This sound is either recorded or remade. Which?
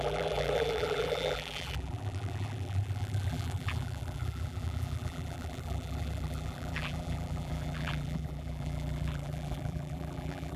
remade